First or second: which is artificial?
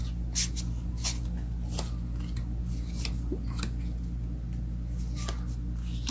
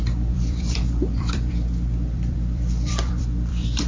second